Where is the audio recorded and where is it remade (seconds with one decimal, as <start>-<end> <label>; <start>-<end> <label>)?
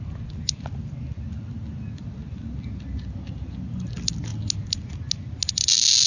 0.0-6.1 recorded